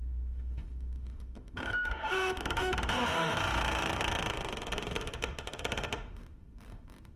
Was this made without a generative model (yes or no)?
no